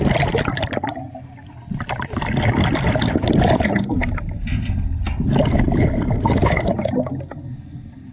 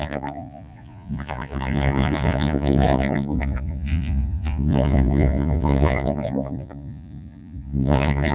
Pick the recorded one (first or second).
first